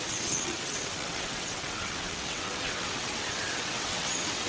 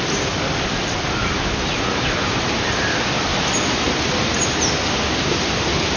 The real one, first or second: second